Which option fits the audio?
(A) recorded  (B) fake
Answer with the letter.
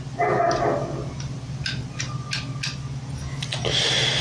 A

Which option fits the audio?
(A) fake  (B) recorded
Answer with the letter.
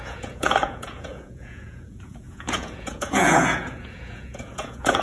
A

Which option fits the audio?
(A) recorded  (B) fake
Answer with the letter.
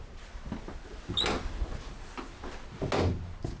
A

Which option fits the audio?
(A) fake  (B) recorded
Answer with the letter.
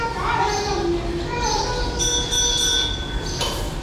B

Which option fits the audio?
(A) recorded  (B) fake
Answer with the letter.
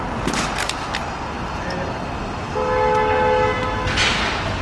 A